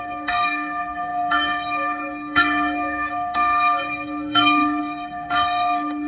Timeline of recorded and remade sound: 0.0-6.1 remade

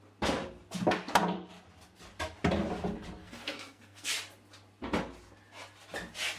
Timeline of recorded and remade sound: 0.0-3.2 recorded; 3.2-4.1 remade; 4.1-6.4 recorded

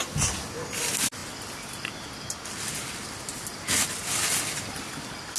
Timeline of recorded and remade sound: 0.0-5.4 recorded

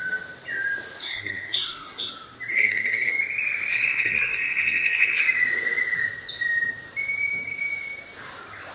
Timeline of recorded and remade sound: 0.0-1.0 recorded; 1.0-2.1 remade; 2.1-2.5 recorded; 2.5-3.1 remade; 3.1-3.7 recorded; 3.7-5.2 remade; 5.2-8.7 recorded

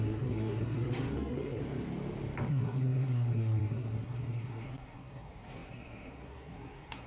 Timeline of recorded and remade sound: 0.0-1.6 remade; 1.6-2.5 recorded; 2.5-7.1 remade

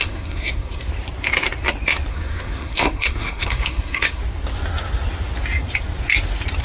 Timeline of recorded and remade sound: 0.0-0.9 remade; 0.9-2.1 recorded; 2.1-4.2 remade; 4.2-6.6 recorded

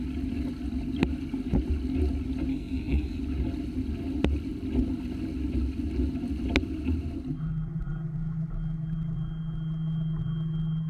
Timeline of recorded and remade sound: 0.0-2.5 recorded; 2.5-3.2 remade; 3.2-10.9 recorded

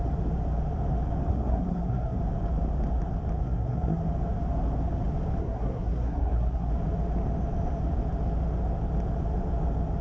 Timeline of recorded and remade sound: 0.0-1.3 recorded; 1.3-2.2 remade; 2.2-3.4 recorded; 3.4-4.0 remade; 4.0-5.4 recorded; 5.4-6.7 remade; 6.7-10.0 recorded